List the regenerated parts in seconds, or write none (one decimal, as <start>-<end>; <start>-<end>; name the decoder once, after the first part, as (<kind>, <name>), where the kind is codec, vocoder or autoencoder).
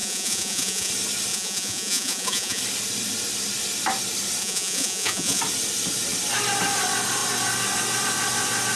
0.0-0.9 (vocoder, Vocos); 1.3-2.6; 4.4-5.4